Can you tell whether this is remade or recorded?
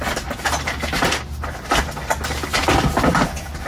recorded